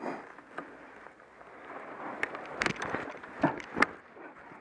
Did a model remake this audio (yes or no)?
no